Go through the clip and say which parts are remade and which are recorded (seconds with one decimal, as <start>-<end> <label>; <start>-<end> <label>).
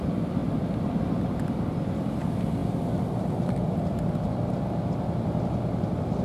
0.0-0.4 remade; 0.4-1.0 recorded; 1.0-2.6 remade; 2.6-6.2 recorded